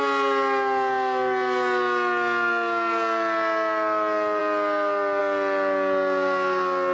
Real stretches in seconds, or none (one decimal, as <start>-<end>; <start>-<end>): 0.0-6.9